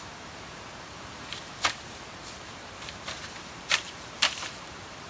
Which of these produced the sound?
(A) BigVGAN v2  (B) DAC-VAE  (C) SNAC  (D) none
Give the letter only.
A